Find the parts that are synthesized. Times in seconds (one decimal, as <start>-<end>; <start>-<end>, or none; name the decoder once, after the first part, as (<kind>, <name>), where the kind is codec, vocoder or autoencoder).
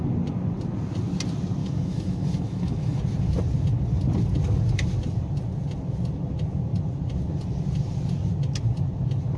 1.6-3.0 (autoencoder, DAC-VAE)